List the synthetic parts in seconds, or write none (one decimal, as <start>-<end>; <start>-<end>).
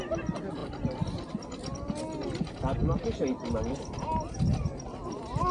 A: none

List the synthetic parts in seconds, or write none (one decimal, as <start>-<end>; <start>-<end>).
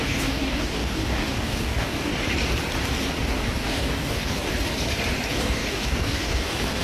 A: 0.0-2.1; 3.3-4.5; 5.3-6.8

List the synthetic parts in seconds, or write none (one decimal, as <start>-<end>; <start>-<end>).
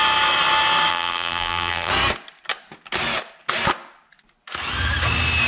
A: 0.9-1.9